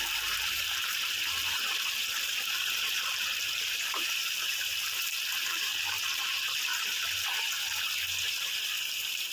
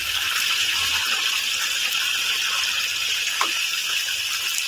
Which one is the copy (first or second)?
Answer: first